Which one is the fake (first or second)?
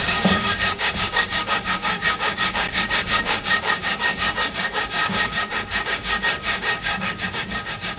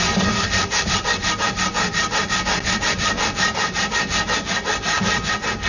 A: first